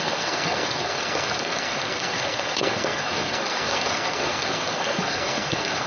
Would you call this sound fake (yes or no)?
yes